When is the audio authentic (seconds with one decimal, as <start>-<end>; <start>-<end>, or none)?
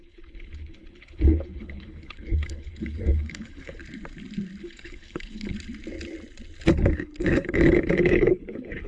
3.8-4.6; 5.5-6.7